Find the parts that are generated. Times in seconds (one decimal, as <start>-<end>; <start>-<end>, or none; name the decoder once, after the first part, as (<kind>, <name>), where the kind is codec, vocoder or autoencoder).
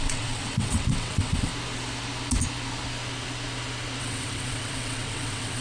0.0-1.5 (vocoder, WaveNeXt); 4.0-5.6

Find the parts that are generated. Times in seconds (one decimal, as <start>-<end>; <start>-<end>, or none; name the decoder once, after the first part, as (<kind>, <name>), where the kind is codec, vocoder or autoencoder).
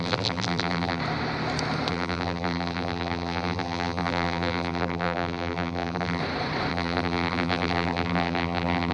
0.0-1.0 (vocoder, BigVGAN v2); 1.9-6.2; 6.7-8.9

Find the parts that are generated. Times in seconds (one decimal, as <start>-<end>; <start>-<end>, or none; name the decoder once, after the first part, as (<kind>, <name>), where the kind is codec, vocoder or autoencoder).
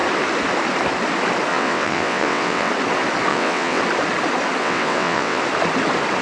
1.5-2.7 (vocoder, WaveNeXt); 3.3-3.8; 4.6-5.4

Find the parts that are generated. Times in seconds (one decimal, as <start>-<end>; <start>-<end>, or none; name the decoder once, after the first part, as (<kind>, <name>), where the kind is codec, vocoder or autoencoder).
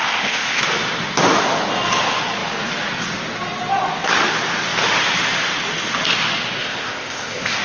0.0-0.6 (codec, ZipCodec); 6.6-7.6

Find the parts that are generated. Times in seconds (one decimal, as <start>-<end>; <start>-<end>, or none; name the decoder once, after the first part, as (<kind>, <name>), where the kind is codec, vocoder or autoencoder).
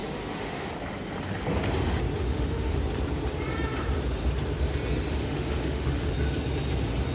0.0-0.7 (autoencoder, DAC-VAE); 2.2-2.8; 5.2-6.1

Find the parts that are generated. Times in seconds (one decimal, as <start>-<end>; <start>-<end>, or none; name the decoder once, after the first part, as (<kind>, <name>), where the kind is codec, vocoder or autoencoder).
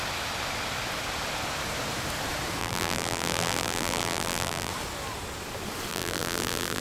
2.6-4.7 (vocoder, BigVGAN v2); 5.9-6.8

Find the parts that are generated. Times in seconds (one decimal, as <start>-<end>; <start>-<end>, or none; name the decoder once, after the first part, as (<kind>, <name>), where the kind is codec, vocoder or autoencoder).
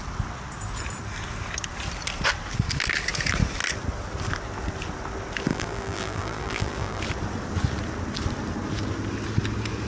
5.5-7.0 (vocoder, BigVGAN v2)